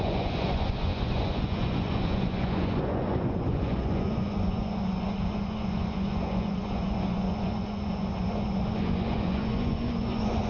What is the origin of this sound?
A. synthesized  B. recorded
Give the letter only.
A